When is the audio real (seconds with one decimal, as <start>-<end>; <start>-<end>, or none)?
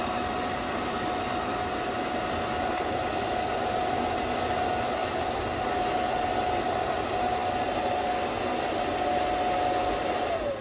0.0-10.6